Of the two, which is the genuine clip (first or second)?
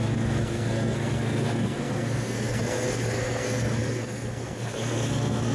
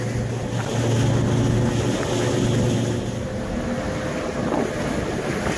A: second